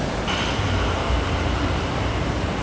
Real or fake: fake